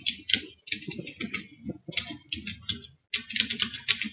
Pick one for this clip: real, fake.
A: real